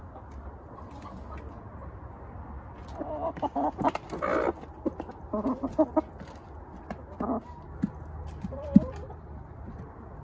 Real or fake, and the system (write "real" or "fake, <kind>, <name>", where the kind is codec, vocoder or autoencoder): real